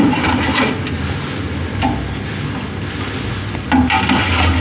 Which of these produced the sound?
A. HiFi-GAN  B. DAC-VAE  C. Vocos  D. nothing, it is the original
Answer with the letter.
D